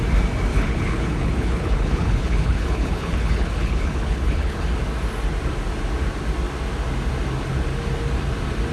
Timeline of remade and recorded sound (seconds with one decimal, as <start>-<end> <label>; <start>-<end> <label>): 0.0-0.5 recorded; 0.5-4.6 remade; 4.6-8.7 recorded